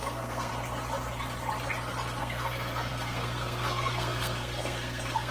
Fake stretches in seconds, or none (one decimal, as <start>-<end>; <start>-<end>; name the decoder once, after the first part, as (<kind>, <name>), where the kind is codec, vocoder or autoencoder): 0.0-0.5 (codec, SNAC); 2.2-5.3

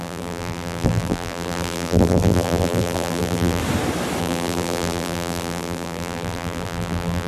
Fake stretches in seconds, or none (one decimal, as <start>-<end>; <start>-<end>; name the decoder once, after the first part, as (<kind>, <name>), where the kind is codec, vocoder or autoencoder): 0.0-3.6 (vocoder, BigVGAN v2); 4.2-7.3

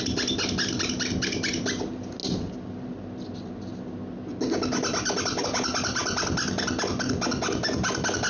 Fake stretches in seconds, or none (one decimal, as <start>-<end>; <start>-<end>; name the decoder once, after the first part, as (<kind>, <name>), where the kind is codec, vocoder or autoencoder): none

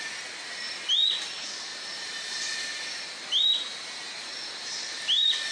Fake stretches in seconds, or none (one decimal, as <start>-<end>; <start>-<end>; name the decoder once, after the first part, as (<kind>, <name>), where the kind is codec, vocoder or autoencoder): none

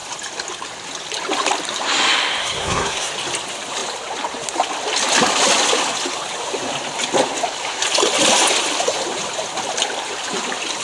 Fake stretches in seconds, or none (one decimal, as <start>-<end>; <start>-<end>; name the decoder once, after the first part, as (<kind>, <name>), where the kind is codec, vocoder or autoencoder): 2.4-3.1 (codec, SNAC)

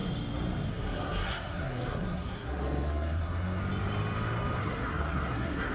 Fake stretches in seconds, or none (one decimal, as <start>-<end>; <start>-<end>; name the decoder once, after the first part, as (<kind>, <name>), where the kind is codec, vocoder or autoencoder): 0.7-3.6 (codec, SNAC); 4.6-5.7

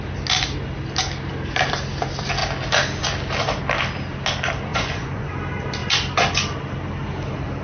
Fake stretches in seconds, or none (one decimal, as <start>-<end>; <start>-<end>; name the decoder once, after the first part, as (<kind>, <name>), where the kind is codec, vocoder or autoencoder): 4.7-5.3 (vocoder, Vocos)

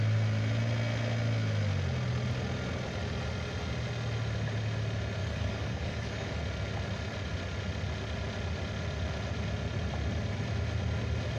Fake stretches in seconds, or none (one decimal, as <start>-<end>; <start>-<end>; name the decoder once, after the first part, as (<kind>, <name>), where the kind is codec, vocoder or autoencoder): 5.2-6.4 (codec, DAC)